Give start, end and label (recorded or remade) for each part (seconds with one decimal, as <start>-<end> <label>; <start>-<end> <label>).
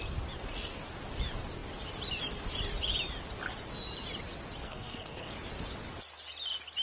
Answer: 0.0-4.6 recorded; 4.6-5.3 remade; 5.3-6.8 recorded